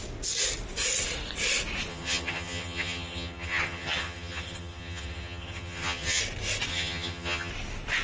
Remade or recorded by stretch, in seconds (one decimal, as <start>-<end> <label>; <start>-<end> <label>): 0.0-1.9 recorded; 1.9-6.2 remade; 6.2-6.7 recorded; 6.7-7.5 remade; 7.5-8.0 recorded

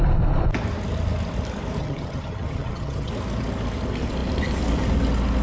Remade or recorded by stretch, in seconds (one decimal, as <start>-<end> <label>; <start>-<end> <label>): 0.0-1.8 recorded; 1.8-3.1 remade; 3.1-5.4 recorded